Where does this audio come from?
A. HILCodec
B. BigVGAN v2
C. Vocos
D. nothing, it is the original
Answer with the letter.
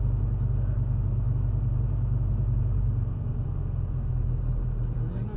D